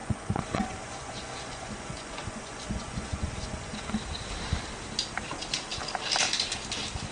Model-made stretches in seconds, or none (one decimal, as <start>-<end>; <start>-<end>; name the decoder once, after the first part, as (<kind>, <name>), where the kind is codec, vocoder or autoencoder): 0.0-3.9 (vocoder, Vocos)